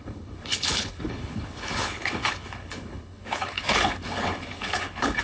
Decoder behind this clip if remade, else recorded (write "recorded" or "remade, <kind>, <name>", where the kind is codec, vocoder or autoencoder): remade, codec, HILCodec